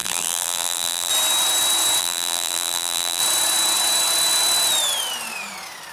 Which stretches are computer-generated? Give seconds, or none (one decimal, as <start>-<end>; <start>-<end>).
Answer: 0.0-1.1; 2.0-3.2